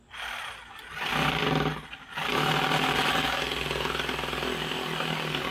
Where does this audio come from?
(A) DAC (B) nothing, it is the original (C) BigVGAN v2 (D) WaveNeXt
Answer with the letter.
B